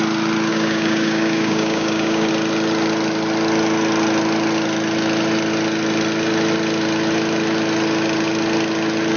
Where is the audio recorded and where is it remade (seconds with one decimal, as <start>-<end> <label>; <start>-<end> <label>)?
0.0-0.5 recorded; 0.5-2.3 remade; 2.3-9.2 recorded